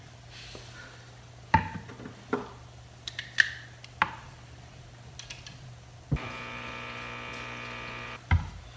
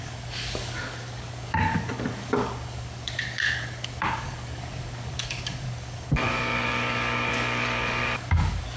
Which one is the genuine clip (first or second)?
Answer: first